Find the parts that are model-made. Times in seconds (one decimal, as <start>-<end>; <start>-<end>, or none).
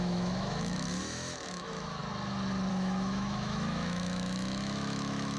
0.0-2.0; 2.7-5.4